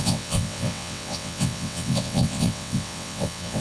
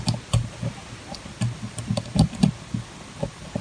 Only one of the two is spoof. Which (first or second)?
first